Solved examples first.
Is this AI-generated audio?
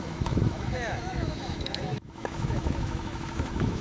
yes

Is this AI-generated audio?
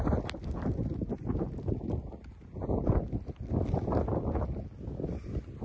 no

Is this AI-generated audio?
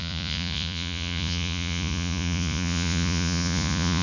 yes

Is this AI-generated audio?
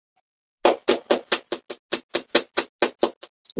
no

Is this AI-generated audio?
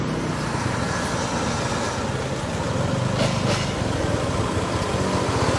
no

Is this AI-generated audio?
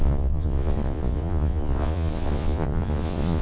yes